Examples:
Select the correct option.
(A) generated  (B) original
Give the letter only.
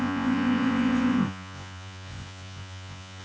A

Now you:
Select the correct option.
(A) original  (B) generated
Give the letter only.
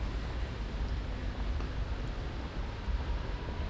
B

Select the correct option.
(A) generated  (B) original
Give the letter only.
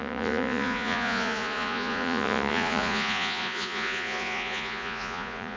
A